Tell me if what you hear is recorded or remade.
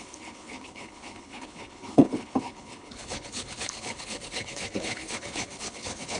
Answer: remade